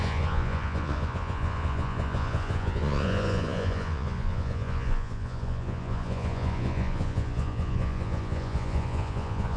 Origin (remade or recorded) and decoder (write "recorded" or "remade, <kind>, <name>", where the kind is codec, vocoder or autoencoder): remade, vocoder, Vocos